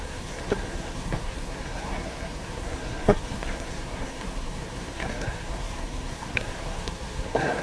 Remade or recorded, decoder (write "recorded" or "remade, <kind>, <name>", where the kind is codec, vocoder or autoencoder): remade, codec, SNAC